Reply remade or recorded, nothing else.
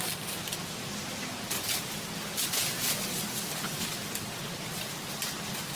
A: recorded